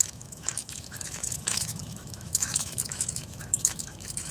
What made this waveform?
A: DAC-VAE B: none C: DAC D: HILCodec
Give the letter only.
A